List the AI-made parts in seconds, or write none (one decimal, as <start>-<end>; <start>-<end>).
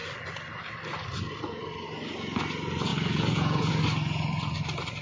2.9-3.7